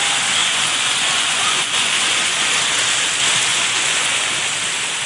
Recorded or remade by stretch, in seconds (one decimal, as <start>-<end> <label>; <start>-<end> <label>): 0.0-0.4 recorded; 0.4-2.6 remade; 2.6-3.5 recorded; 3.5-4.3 remade; 4.3-5.1 recorded

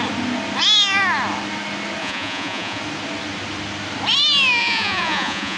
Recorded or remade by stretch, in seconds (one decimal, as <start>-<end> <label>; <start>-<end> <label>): 0.0-2.0 recorded; 2.0-2.8 remade; 2.8-4.6 recorded; 4.6-5.6 remade

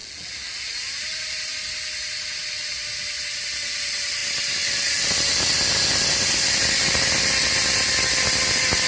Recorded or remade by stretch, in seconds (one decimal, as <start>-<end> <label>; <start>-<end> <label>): 0.0-8.9 recorded